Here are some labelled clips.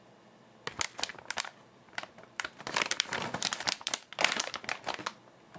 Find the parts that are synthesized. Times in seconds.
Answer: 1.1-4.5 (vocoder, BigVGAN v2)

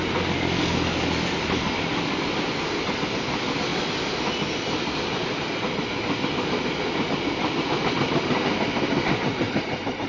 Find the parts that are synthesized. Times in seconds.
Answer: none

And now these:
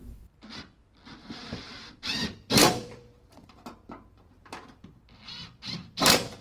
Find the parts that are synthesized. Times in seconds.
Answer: 1.2-5.0 (vocoder, BigVGAN v2); 5.4-6.4